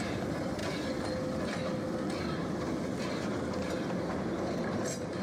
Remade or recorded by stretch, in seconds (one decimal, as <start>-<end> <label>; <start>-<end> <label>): 0.0-5.2 recorded

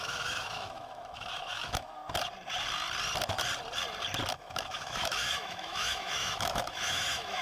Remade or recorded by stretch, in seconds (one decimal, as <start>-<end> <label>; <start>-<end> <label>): 0.0-2.0 remade; 2.0-4.3 recorded; 4.3-7.4 remade

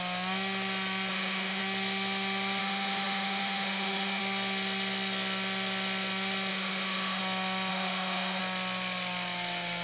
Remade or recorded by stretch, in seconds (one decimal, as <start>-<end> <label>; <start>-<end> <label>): 0.0-1.1 recorded; 1.1-1.6 remade; 1.6-2.6 recorded; 2.6-4.2 remade; 4.2-6.5 recorded; 6.5-7.2 remade; 7.2-7.7 recorded; 7.7-8.4 remade; 8.4-9.8 recorded

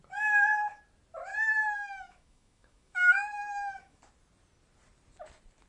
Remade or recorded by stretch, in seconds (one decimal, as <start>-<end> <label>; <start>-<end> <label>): 0.0-1.3 recorded; 1.3-4.0 remade; 4.0-5.7 recorded

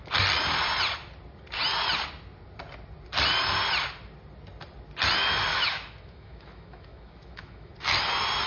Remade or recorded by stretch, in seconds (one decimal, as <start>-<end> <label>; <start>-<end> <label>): 0.0-5.5 recorded; 5.5-7.7 remade; 7.7-8.5 recorded

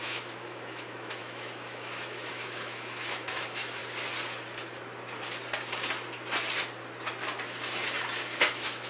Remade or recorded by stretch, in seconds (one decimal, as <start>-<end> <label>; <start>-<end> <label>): 0.0-3.8 remade; 3.8-8.4 recorded; 8.4-8.9 remade

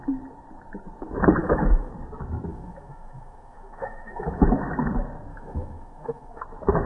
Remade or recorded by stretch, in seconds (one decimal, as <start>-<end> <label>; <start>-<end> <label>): 0.0-1.4 recorded; 1.4-1.9 remade; 1.9-2.5 recorded; 2.5-4.4 remade; 4.4-5.3 recorded; 5.3-6.4 remade; 6.4-6.9 recorded